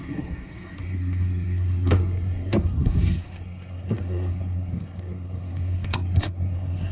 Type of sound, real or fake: fake